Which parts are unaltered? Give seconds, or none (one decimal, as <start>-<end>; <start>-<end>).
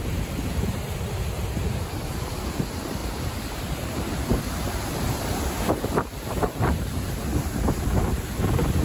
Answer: none